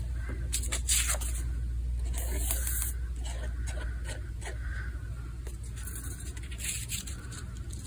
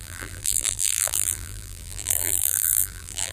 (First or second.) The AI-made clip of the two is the second